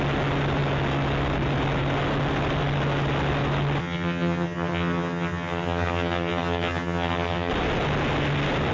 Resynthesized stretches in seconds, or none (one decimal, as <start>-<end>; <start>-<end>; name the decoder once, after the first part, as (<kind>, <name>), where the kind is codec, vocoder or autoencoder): 3.8-7.5 (vocoder, HiFi-GAN)